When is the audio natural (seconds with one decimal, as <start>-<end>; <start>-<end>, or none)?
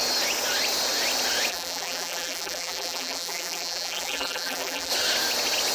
0.0-1.5; 4.9-5.7